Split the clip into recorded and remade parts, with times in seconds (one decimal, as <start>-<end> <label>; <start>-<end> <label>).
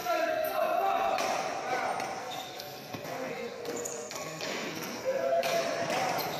0.0-1.1 remade; 1.1-2.2 recorded; 2.2-5.6 remade; 5.6-6.4 recorded